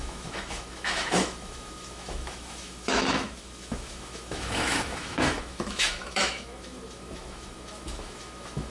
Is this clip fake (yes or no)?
yes